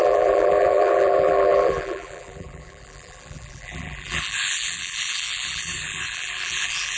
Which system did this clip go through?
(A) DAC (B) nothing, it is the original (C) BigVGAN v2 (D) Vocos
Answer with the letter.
C